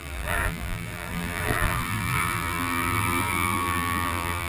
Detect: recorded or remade remade